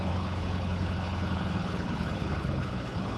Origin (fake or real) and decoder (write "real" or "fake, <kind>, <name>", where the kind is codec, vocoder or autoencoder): fake, codec, HILCodec